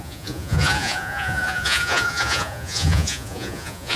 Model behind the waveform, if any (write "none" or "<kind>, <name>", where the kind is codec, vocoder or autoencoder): vocoder, Vocos